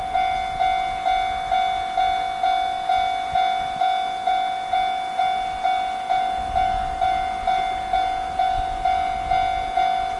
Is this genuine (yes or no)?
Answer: yes